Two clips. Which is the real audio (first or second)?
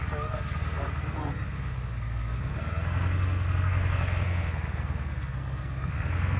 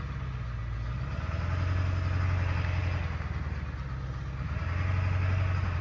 second